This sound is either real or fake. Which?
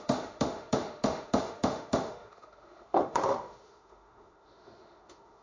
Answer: fake